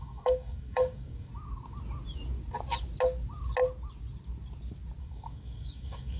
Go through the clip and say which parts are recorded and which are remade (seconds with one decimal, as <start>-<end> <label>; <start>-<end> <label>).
0.0-1.3 remade; 1.3-5.0 recorded; 5.0-6.2 remade